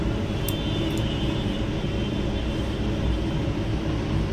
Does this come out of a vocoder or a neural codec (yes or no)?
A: no